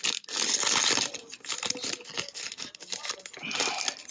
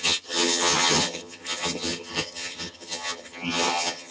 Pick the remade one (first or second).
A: second